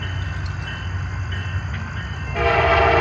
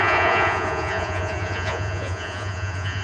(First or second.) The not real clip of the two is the second